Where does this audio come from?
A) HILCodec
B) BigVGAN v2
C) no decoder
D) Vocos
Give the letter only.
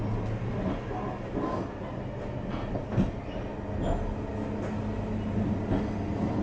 C